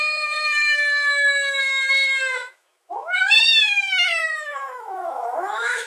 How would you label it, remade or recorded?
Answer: remade